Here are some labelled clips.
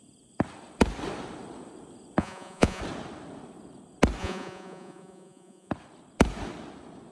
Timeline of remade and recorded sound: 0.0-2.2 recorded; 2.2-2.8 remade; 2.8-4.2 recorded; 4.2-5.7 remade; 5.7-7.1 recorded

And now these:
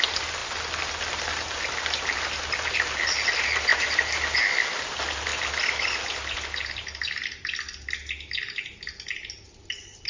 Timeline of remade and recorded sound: 0.0-10.1 recorded